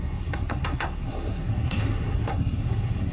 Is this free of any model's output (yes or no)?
no